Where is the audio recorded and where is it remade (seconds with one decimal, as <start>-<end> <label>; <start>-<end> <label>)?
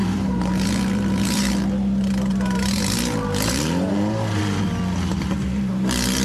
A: 0.0-1.5 remade; 1.5-2.3 recorded; 2.3-4.4 remade; 4.4-5.1 recorded; 5.1-5.7 remade; 5.7-6.2 recorded